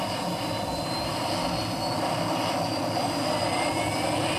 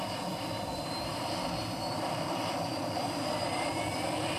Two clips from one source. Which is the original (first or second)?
first